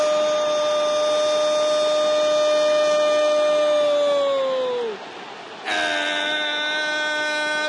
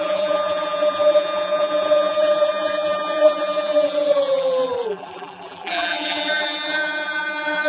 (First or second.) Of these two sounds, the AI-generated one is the second